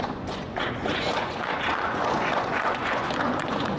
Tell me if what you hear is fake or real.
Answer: fake